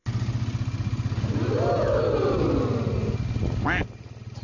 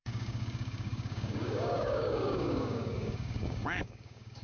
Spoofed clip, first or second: second